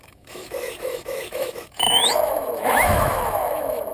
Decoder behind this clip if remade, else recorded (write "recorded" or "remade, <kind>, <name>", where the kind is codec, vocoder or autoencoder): remade, autoencoder, DAC-VAE